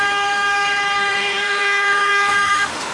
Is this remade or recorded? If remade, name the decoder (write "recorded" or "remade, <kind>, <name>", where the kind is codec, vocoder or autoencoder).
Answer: remade, autoencoder, DAC-VAE